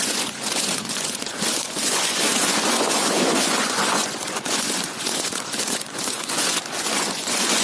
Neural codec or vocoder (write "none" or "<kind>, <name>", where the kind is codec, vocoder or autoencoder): vocoder, Vocos